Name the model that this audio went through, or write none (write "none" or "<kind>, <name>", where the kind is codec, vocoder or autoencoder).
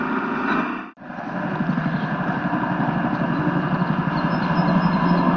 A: none